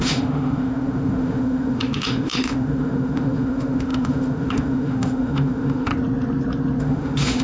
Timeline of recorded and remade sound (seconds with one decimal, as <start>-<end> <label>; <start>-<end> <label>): 0.0-5.9 remade; 5.9-6.8 recorded; 6.8-7.4 remade